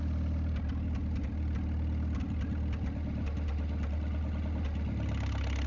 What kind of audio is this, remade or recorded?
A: recorded